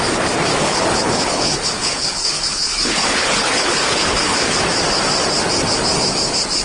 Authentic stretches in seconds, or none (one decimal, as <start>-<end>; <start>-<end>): 0.0-0.6; 4.6-6.6